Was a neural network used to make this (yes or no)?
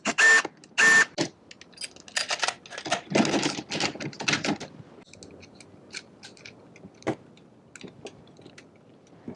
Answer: no